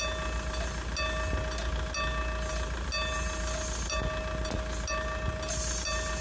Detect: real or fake real